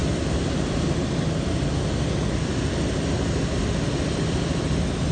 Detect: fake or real real